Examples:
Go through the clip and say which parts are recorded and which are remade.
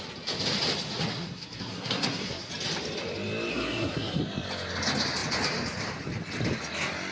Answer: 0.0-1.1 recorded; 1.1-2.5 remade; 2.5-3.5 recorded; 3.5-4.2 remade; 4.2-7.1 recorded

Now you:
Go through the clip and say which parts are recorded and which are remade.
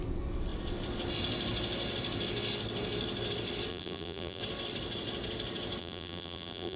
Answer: 0.0-3.7 recorded; 3.7-4.4 remade; 4.4-5.8 recorded; 5.8-6.8 remade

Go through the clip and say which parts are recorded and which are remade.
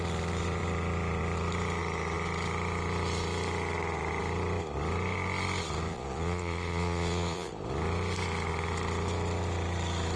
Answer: 0.0-5.9 recorded; 5.9-7.5 remade; 7.5-10.2 recorded